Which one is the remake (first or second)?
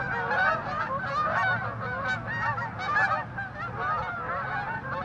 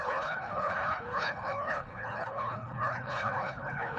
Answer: second